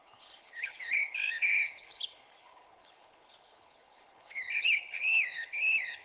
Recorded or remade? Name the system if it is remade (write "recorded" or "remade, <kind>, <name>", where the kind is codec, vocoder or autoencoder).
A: remade, codec, HILCodec